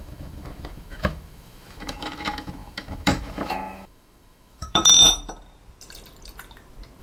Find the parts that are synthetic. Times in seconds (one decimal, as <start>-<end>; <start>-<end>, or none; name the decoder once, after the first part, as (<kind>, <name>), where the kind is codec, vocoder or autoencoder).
0.0-4.9 (autoencoder, DAC-VAE)